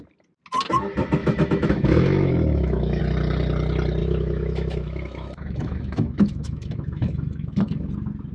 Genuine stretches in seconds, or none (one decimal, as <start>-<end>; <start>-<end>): 0.0-1.2; 3.0-4.0; 7.9-8.3